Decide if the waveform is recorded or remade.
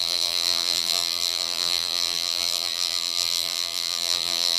remade